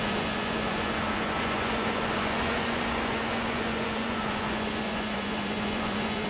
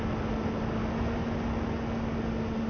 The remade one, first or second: first